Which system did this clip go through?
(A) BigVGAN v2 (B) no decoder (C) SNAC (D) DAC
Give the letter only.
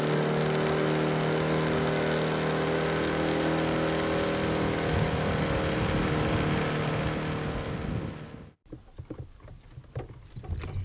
B